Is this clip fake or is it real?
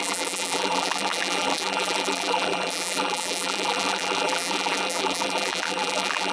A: fake